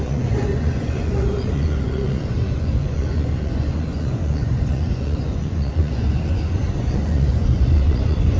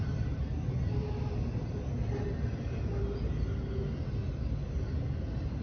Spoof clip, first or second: first